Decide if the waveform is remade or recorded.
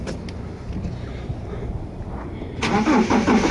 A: recorded